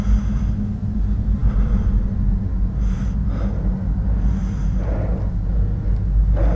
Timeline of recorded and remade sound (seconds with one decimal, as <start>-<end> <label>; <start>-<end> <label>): 0.0-6.5 recorded